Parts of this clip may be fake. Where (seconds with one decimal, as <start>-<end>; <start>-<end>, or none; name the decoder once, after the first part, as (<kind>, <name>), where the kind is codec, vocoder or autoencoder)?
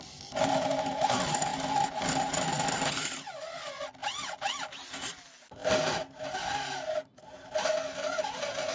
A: none